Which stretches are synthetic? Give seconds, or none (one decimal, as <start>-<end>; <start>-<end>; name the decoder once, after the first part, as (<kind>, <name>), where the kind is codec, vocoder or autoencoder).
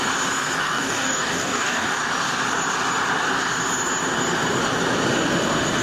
0.6-1.9 (codec, DAC)